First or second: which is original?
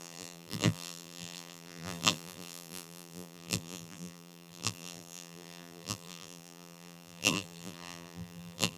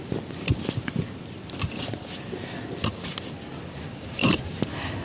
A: second